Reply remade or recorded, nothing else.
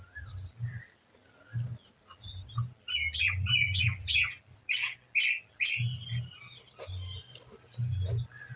recorded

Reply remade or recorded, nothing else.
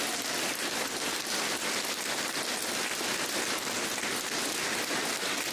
recorded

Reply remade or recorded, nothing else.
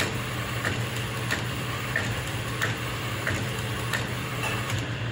remade